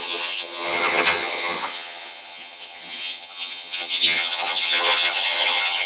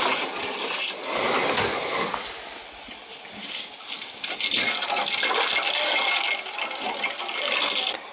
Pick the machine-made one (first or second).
first